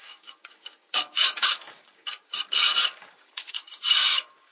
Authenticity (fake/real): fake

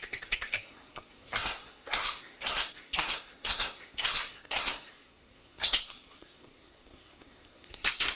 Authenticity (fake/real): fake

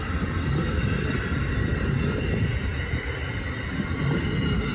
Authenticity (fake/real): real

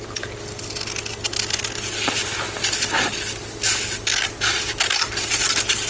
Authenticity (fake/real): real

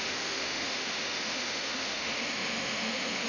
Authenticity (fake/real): fake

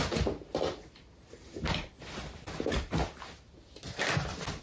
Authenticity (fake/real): real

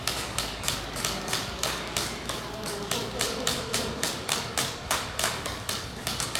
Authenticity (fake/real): fake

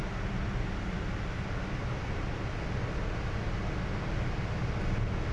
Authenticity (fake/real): real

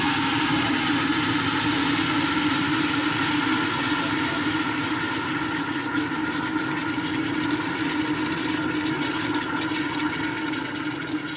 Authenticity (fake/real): real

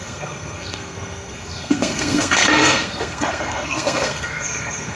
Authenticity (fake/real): fake